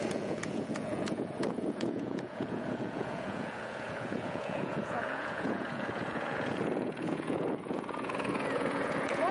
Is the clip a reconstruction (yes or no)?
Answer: yes